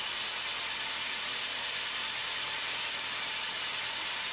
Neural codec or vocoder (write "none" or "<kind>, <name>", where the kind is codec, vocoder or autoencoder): none